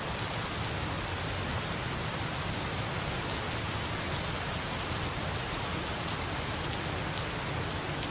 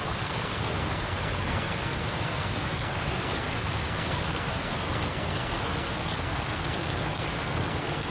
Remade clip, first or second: second